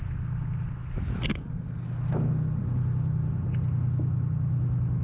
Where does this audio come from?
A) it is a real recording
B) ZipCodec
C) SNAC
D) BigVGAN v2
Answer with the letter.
A